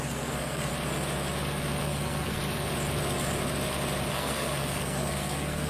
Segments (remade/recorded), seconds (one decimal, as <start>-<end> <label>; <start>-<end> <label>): 0.0-0.7 remade; 0.7-1.8 recorded; 1.8-2.4 remade; 2.4-4.1 recorded; 4.1-5.7 remade